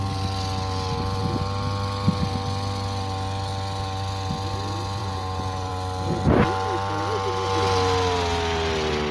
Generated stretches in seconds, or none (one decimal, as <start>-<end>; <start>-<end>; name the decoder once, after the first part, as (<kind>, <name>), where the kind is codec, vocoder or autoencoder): 5.0-5.7 (vocoder, Vocos)

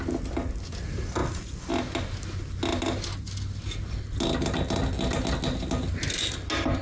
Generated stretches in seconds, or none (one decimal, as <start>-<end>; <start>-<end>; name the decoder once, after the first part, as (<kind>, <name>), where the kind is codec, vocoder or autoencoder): none

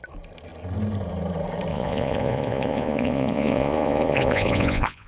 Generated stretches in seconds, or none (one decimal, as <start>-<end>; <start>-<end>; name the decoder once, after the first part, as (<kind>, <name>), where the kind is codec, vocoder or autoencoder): 1.7-5.1 (vocoder, Vocos)

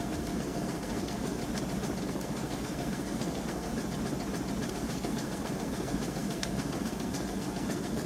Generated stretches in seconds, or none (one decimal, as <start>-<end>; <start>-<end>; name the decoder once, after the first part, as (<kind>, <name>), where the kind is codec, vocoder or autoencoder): 0.0-1.4 (codec, SNAC); 2.0-3.7; 4.7-8.1

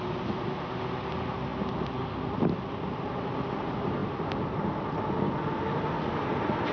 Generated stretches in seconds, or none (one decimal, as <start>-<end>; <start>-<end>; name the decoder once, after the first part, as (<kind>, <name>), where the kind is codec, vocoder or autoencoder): none

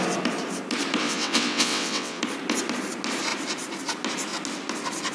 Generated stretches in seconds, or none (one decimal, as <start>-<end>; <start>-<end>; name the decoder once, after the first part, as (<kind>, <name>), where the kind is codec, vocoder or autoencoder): 1.0-2.2 (vocoder, WaveNeXt)

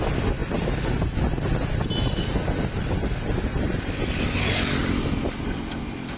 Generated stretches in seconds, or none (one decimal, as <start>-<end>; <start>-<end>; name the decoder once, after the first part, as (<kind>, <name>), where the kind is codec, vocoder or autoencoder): 4.8-6.2 (vocoder, BigVGAN v2)

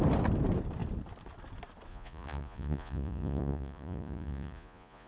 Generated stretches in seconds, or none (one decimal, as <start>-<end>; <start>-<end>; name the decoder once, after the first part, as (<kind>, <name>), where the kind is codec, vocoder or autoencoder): 1.9-5.1 (vocoder, Vocos)